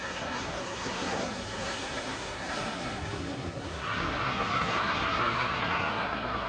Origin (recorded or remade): remade